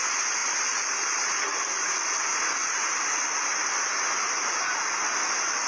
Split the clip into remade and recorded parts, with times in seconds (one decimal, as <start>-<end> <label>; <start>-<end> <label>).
0.0-0.4 recorded; 0.4-1.3 remade; 1.3-5.7 recorded